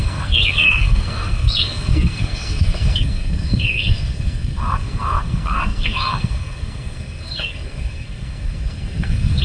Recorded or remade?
remade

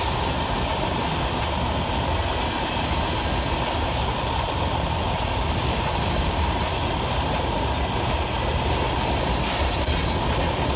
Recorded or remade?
recorded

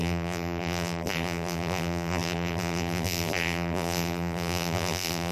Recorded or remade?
remade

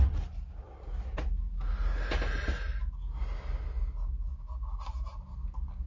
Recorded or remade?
recorded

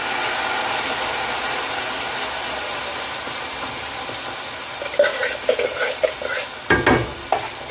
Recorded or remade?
recorded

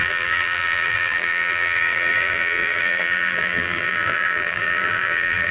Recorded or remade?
remade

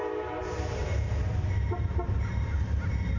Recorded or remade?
remade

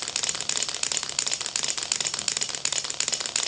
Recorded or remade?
recorded